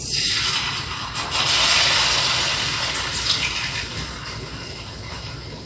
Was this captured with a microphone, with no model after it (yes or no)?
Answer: yes